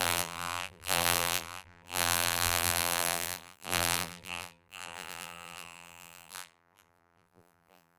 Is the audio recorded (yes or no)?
no